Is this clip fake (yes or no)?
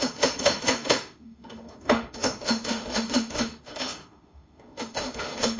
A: yes